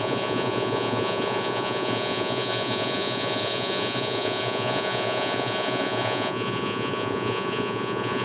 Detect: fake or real fake